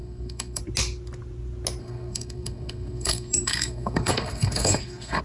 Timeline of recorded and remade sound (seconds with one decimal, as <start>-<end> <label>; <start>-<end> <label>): 0.0-0.6 remade; 0.6-1.8 recorded; 1.8-5.2 remade